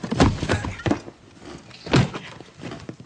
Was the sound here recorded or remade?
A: recorded